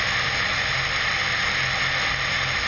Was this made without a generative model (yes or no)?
yes